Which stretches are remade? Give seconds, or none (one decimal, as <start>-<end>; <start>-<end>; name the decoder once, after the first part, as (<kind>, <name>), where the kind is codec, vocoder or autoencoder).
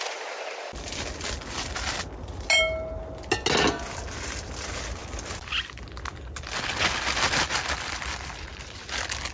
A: none